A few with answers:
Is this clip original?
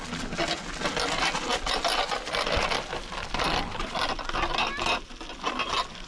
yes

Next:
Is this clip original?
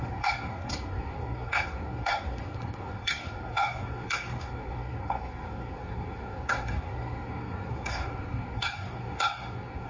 no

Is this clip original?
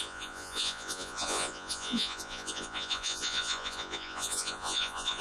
no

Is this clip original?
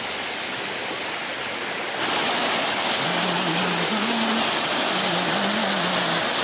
yes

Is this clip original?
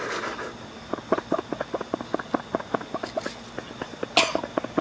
yes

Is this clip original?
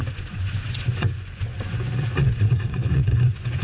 no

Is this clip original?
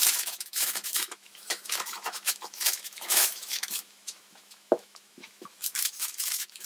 no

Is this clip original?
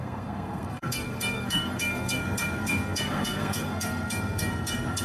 no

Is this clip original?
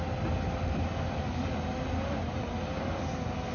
yes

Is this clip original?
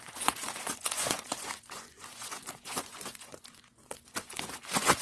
no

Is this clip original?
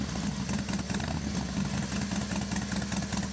yes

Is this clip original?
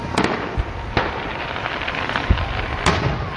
yes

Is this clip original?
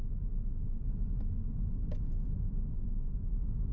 yes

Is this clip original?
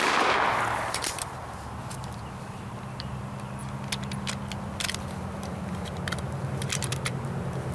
yes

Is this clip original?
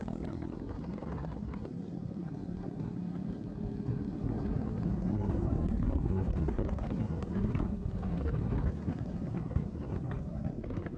no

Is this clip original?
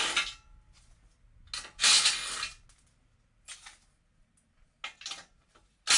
yes